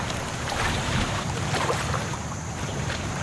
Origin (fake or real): fake